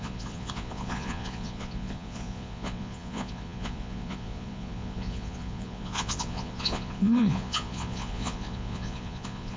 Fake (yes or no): yes